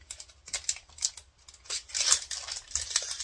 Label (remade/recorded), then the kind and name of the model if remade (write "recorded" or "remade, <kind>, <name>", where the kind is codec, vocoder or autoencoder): recorded